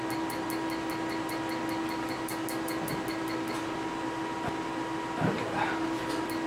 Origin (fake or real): real